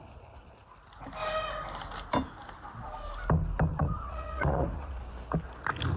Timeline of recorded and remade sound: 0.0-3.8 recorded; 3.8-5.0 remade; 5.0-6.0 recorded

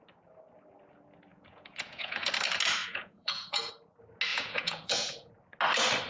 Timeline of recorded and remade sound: 0.0-1.3 recorded; 1.3-2.3 remade; 2.3-2.8 recorded; 2.8-3.7 remade; 3.7-4.3 recorded; 4.3-5.3 remade; 5.3-6.1 recorded

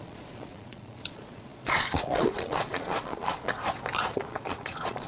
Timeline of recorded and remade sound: 0.0-3.5 remade; 3.5-4.1 recorded; 4.1-5.1 remade

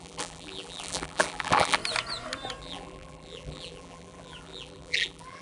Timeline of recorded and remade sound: 0.0-1.8 remade; 1.8-2.6 recorded; 2.6-5.4 remade

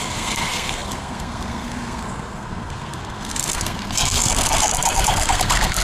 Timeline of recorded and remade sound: 0.0-5.8 remade

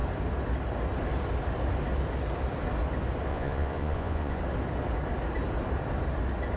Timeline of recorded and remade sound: 0.0-3.3 recorded; 3.3-4.4 remade; 4.4-6.6 recorded

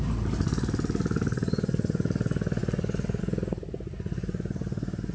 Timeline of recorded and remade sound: 0.0-5.1 recorded